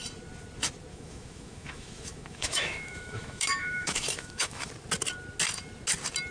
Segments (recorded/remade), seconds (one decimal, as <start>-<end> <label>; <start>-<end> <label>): 0.0-0.9 recorded; 0.9-4.7 remade; 4.7-6.3 recorded